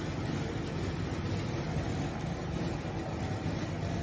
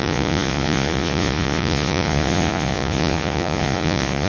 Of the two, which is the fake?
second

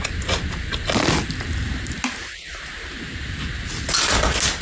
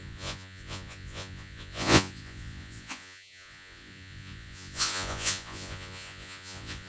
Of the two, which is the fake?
second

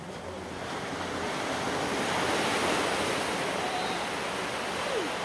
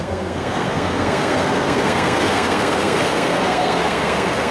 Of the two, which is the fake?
second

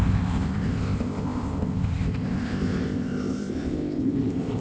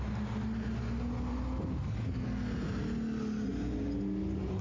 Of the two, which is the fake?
first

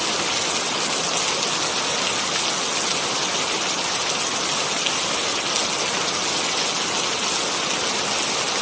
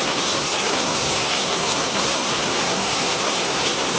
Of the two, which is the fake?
second